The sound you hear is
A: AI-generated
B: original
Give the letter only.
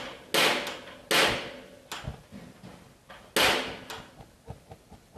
B